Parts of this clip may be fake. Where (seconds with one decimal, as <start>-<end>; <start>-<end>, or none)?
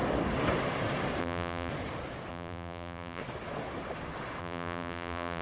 1.2-1.7; 2.3-3.2; 4.4-5.4